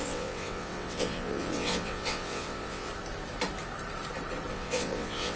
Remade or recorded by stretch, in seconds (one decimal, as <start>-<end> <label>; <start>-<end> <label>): 0.0-2.9 remade; 2.9-4.5 recorded; 4.5-5.4 remade